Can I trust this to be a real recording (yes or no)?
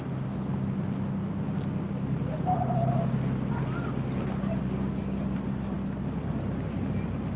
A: yes